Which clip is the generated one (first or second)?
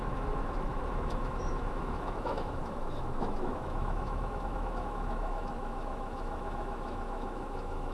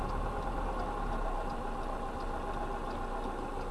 first